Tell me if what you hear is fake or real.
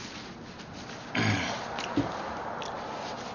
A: real